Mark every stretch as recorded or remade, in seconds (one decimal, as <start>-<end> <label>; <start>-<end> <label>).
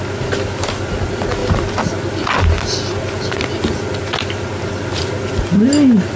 0.0-6.2 recorded